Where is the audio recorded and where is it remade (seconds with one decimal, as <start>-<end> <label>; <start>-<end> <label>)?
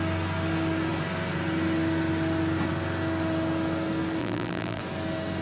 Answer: 0.0-4.2 recorded; 4.2-4.8 remade; 4.8-5.4 recorded